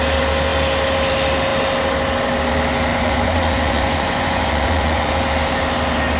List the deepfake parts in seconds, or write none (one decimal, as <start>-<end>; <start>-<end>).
2.9-5.1